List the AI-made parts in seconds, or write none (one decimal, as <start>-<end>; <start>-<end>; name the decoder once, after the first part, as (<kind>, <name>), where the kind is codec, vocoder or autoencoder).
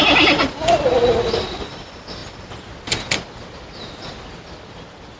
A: none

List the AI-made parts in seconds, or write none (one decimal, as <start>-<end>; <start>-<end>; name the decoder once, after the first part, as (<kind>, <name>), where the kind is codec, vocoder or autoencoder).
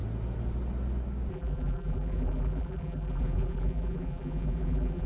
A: 1.3-5.1 (vocoder, BigVGAN v2)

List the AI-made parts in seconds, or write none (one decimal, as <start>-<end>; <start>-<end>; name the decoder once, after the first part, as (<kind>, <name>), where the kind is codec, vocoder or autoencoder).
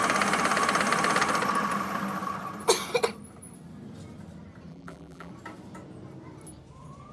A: 4.7-5.3 (vocoder, BigVGAN v2)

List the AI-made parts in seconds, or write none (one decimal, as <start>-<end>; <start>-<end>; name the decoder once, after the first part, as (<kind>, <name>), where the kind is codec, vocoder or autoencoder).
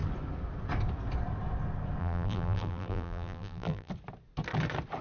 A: 2.0-3.9 (vocoder, BigVGAN v2)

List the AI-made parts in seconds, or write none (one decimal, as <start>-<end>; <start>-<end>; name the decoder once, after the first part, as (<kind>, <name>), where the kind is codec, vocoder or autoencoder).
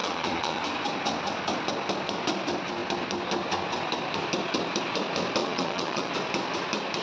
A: 0.0-0.6 (vocoder, Vocos); 5.4-6.1